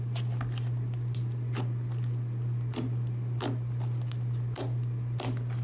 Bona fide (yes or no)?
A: yes